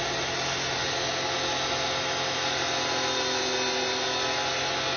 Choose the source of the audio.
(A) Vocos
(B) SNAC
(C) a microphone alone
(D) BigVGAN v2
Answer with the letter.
C